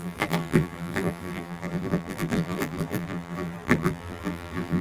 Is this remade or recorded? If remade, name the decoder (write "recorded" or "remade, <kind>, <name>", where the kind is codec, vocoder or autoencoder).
remade, vocoder, BigVGAN v2